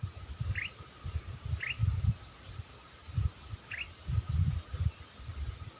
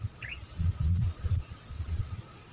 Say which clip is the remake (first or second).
second